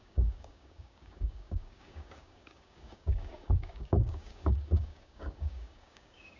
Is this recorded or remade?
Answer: remade